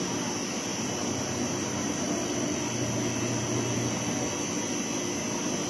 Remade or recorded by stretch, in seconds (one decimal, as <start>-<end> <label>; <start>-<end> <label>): 0.0-5.7 recorded